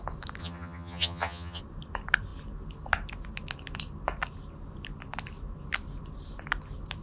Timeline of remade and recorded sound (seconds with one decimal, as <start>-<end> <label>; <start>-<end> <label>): 0.0-0.4 recorded; 0.4-1.6 remade; 1.6-7.0 recorded